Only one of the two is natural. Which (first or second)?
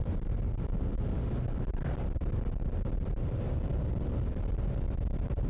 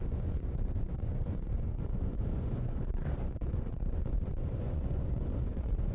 first